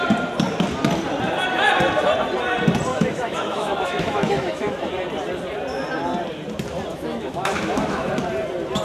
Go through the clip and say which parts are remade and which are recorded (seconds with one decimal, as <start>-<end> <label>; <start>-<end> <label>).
0.0-2.9 recorded; 2.9-4.9 remade; 4.9-6.9 recorded; 6.9-8.1 remade; 8.1-8.8 recorded